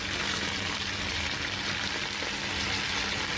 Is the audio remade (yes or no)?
no